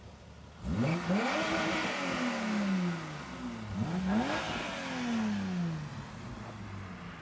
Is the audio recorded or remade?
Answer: recorded